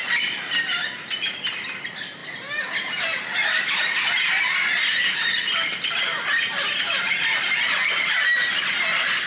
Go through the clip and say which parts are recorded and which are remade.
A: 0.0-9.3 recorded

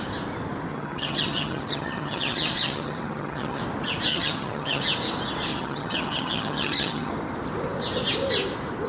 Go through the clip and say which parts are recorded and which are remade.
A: 0.0-0.7 recorded; 0.7-3.6 remade; 3.6-4.1 recorded; 4.1-4.8 remade; 4.8-5.5 recorded; 5.5-7.1 remade; 7.1-8.9 recorded

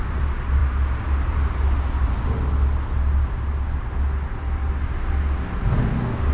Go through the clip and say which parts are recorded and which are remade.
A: 0.0-6.3 recorded

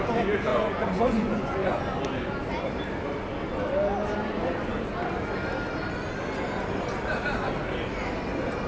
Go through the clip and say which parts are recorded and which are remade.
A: 0.0-0.5 recorded; 0.5-1.8 remade; 1.8-8.7 recorded

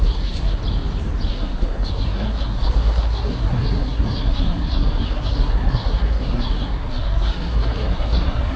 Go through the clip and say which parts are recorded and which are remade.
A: 0.0-0.6 remade; 0.6-1.3 recorded; 1.3-8.6 remade

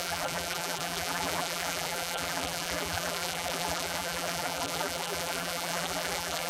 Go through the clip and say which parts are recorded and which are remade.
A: 0.0-6.5 remade

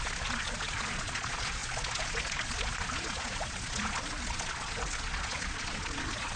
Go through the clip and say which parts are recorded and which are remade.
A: 0.0-6.4 remade